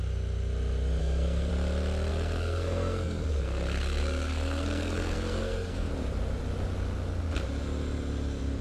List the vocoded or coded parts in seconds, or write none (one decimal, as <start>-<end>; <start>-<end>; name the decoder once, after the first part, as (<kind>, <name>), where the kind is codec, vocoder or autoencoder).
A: 1.0-1.5 (codec, SNAC); 2.1-5.9